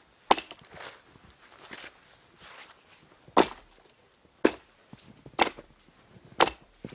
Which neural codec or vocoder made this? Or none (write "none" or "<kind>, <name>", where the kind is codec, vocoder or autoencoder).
none